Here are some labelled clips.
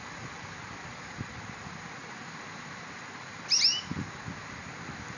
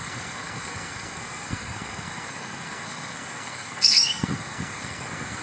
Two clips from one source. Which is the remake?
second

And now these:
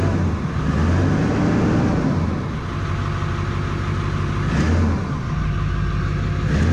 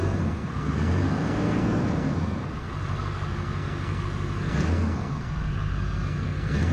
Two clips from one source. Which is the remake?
second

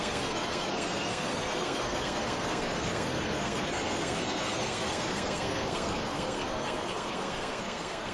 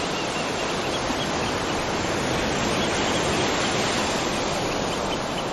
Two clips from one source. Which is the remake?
first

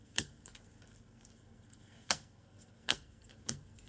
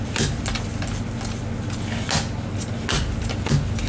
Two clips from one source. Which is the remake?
first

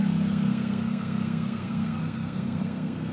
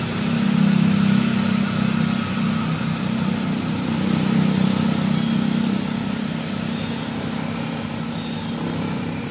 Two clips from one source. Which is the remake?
first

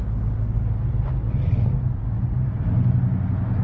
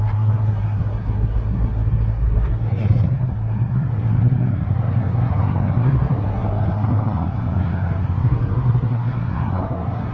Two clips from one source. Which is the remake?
second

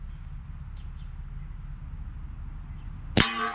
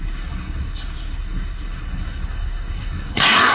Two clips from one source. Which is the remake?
second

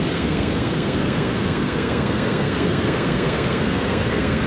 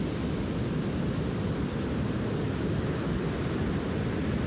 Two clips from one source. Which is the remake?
first